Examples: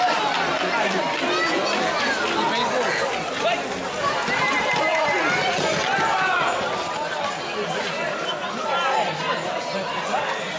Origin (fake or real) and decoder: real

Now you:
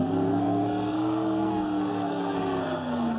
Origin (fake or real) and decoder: fake, codec, SNAC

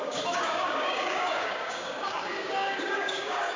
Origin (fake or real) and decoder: fake, codec, DAC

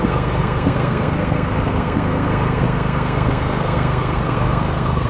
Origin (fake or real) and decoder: fake, codec, SNAC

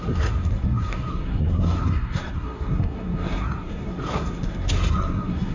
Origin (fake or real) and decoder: fake, codec, SNAC